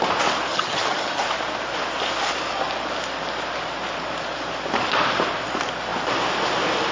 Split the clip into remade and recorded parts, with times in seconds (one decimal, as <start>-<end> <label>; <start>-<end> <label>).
0.0-0.5 recorded; 0.5-1.2 remade; 1.2-6.9 recorded